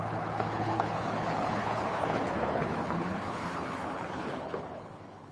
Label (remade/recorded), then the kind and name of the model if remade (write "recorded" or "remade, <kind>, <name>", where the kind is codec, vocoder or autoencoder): remade, codec, HILCodec